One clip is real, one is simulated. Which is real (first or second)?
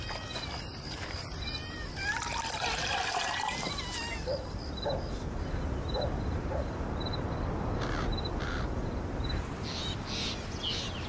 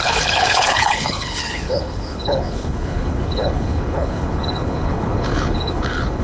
first